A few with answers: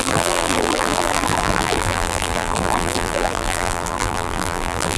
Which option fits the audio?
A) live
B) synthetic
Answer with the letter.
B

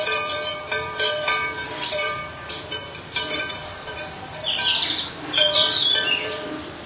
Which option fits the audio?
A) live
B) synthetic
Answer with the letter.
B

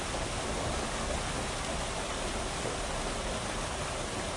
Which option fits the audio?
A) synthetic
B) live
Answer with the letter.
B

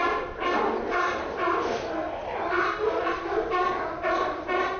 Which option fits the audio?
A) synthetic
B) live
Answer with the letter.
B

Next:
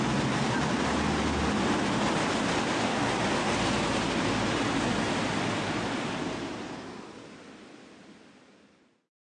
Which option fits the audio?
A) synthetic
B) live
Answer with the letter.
B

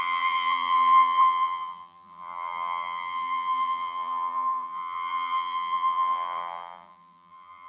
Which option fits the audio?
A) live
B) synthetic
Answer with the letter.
B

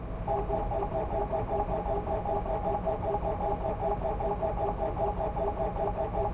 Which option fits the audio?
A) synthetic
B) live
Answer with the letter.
B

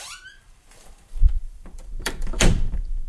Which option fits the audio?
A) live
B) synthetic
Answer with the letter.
B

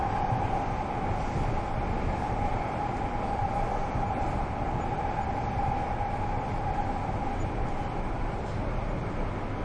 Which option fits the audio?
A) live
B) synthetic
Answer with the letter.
A